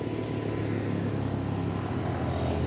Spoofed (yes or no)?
no